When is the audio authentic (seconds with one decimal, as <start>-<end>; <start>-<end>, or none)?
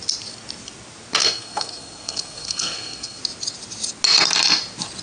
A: 0.0-1.2; 3.2-5.0